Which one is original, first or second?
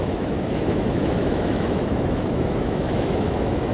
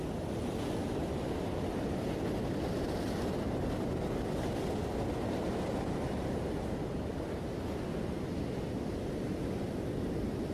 second